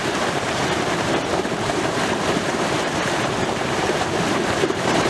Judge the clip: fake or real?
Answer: fake